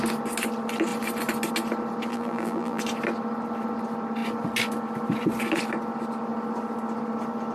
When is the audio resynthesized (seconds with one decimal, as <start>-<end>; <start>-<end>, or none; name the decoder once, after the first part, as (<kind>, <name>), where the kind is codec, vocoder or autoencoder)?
2.1-2.8 (vocoder, BigVGAN v2)